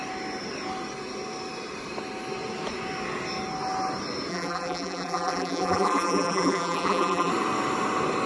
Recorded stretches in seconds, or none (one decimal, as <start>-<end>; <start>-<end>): 0.0-4.3; 7.3-8.3